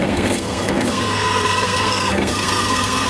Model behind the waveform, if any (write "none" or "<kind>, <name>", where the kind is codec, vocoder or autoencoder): codec, SNAC